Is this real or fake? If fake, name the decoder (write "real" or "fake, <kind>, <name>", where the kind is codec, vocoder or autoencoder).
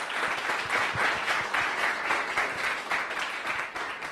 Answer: real